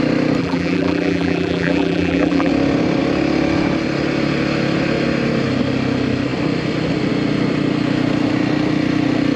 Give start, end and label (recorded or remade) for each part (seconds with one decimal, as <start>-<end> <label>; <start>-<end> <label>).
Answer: 0.0-0.4 recorded; 0.4-2.5 remade; 2.5-9.4 recorded